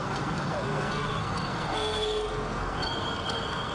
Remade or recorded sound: remade